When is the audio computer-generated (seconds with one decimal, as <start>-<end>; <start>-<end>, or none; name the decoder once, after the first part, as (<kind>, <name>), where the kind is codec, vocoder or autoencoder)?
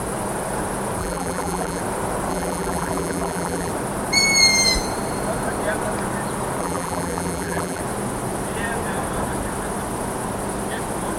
1.0-1.8 (vocoder, BigVGAN v2); 2.3-3.7; 6.6-7.8